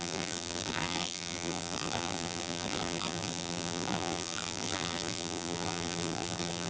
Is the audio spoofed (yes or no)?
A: yes